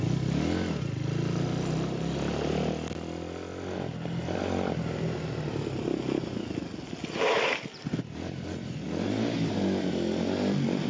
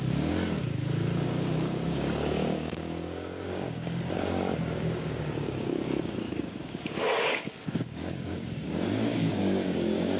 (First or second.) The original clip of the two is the first